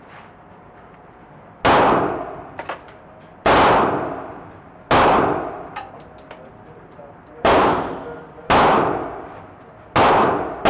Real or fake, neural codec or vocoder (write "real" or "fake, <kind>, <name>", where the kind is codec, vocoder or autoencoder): real